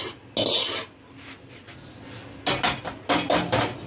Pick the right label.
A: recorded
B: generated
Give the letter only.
A